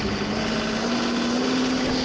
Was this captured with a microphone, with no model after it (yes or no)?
yes